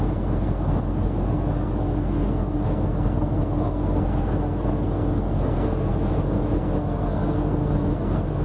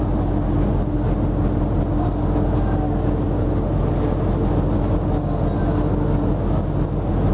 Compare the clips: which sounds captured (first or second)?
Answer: second